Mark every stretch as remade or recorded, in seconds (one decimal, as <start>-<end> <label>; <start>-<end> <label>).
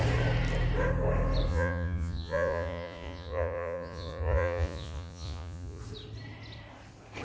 0.0-1.5 recorded; 1.5-5.8 remade; 5.8-7.2 recorded